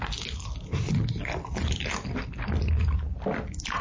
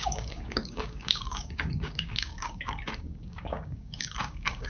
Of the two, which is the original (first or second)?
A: first